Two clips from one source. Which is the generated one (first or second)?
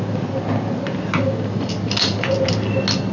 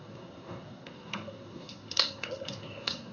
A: second